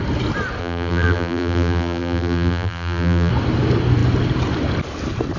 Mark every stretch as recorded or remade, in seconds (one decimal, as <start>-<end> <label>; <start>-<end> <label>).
0.0-0.6 recorded; 0.6-3.3 remade; 3.3-5.4 recorded